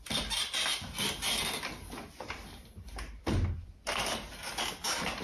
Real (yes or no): no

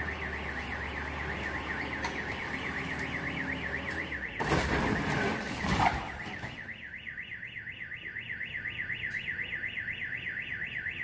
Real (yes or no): yes